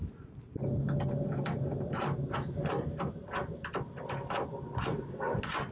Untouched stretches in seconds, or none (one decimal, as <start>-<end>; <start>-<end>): 3.0-5.7